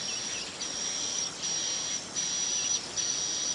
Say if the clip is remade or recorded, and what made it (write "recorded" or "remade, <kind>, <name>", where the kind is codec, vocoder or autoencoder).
recorded